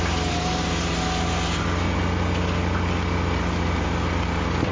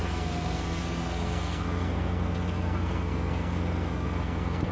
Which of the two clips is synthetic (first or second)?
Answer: second